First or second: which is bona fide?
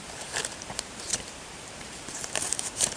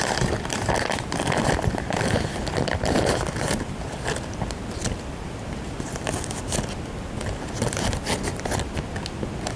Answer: second